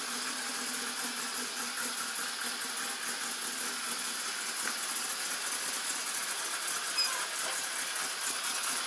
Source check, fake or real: real